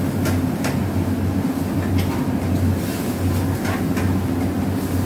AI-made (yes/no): no